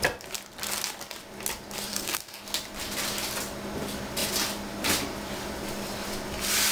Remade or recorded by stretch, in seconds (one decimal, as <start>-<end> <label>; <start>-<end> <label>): 0.0-1.9 recorded; 1.9-2.4 remade; 2.4-6.7 recorded